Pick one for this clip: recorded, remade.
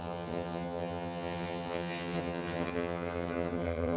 remade